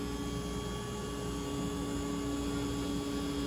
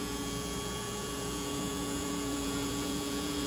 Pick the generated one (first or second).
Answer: second